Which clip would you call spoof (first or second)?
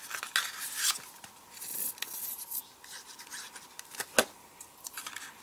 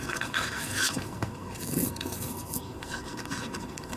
second